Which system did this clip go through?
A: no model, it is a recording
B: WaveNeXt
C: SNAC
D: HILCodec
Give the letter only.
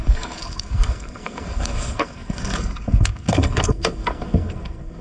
C